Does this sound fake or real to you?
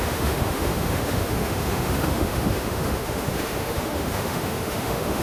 fake